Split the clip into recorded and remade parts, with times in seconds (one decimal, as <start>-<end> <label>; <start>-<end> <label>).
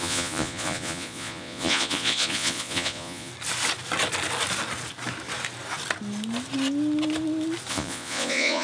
0.0-3.3 remade; 3.3-7.7 recorded; 7.7-8.6 remade